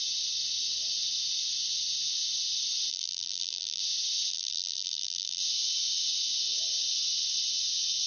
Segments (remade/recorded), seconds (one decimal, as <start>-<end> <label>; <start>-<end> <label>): 0.0-2.9 recorded; 2.9-3.8 remade; 3.8-4.3 recorded; 4.3-5.4 remade; 5.4-8.1 recorded

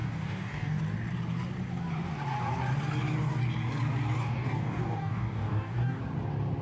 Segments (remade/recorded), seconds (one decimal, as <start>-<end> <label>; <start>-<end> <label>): 0.0-0.8 remade; 0.8-4.2 recorded; 4.2-6.0 remade; 6.0-6.6 recorded

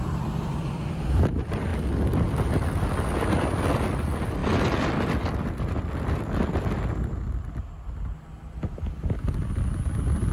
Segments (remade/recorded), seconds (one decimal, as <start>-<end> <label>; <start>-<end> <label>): 0.0-10.3 recorded

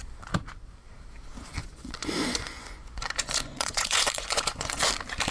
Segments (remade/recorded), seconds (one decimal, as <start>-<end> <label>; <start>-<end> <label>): 0.0-1.6 recorded; 1.6-4.8 remade; 4.8-5.3 recorded

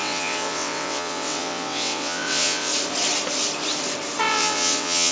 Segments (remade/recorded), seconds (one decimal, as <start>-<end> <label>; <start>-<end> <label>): 0.0-2.7 remade; 2.7-4.2 recorded; 4.2-5.1 remade

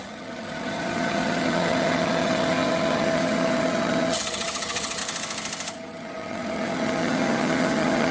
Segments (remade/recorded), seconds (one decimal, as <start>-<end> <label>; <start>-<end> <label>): 0.0-5.0 remade; 5.0-5.7 recorded; 5.7-8.1 remade

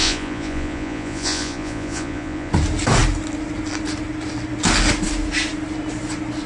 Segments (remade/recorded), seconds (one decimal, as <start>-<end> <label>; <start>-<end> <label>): 0.0-2.5 remade; 2.5-6.5 recorded